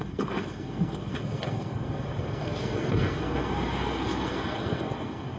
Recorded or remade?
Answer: remade